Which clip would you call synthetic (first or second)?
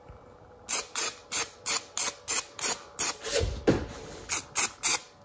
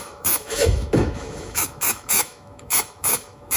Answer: second